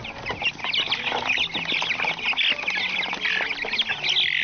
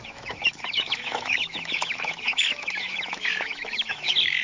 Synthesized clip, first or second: second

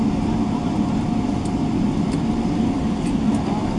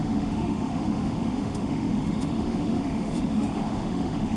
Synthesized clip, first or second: second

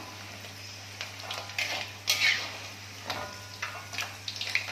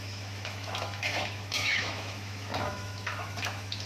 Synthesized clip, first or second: second